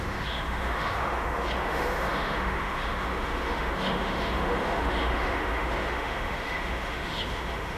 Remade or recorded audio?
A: remade